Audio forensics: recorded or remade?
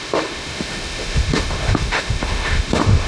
remade